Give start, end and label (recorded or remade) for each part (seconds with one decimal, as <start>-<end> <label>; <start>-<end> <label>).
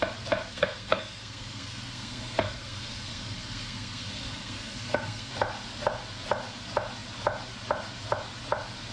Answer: 0.0-0.5 recorded; 0.5-5.3 remade; 5.3-8.9 recorded